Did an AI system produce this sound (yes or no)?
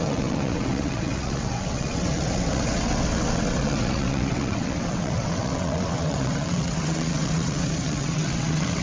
yes